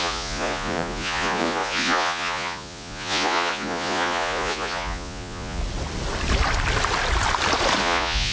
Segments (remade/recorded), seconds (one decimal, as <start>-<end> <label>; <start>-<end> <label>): 0.0-5.6 remade; 5.6-7.8 recorded; 7.8-8.3 remade